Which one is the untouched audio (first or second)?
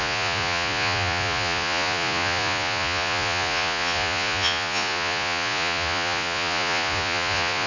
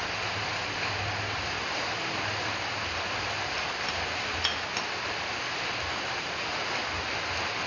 second